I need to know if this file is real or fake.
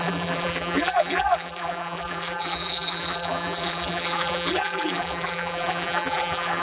fake